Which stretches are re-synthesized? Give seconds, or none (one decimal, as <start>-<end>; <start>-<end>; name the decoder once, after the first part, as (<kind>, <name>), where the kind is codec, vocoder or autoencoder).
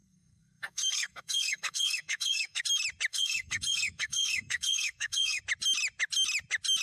0.0-2.6 (codec, SNAC); 3.1-5.4